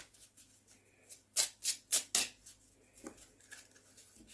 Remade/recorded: recorded